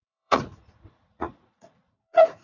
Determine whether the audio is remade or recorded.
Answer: remade